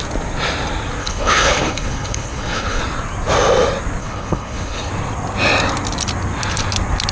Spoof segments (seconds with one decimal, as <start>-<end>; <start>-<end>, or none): 1.0-2.8; 4.0-4.9